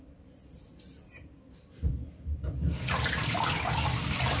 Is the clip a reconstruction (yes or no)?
no